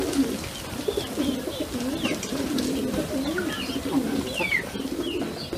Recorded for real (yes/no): yes